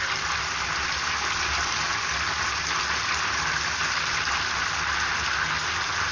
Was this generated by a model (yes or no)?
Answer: no